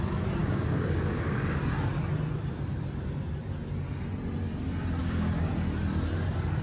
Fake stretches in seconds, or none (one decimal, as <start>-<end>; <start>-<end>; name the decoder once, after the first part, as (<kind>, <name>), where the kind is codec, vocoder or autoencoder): 0.4-1.6 (codec, DAC); 5.0-5.5